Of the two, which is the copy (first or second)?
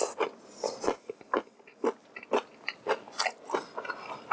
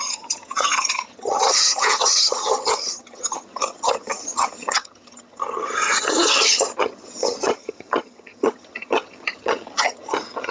second